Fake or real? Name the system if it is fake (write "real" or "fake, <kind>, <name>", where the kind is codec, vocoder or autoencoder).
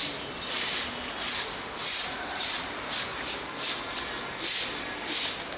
real